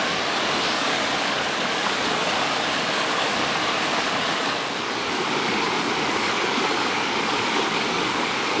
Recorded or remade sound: remade